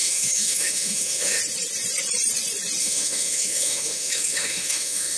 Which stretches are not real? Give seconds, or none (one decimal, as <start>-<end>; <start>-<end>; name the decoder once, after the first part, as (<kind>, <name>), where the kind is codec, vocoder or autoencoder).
0.0-1.4 (autoencoder, DAC-VAE); 2.8-5.2